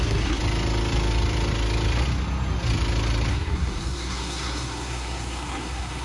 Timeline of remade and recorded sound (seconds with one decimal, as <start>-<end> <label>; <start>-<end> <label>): 0.0-0.4 remade; 0.4-3.3 recorded; 3.3-6.0 remade